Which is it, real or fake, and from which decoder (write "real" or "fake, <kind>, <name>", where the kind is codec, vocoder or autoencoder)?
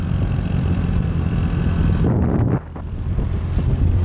real